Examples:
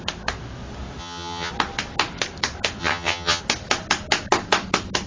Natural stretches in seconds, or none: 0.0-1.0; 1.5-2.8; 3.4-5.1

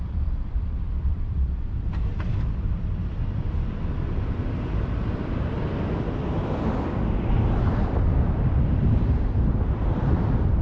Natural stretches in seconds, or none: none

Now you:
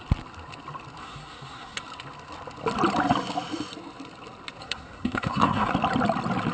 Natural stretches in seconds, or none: 0.0-1.0; 1.8-4.6; 5.7-6.5

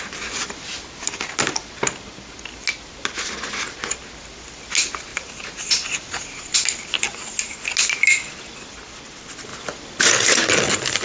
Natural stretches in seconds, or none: 0.0-5.1; 5.9-11.0